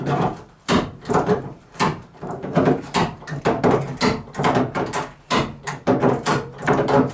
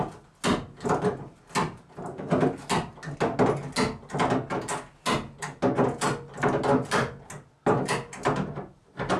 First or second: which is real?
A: second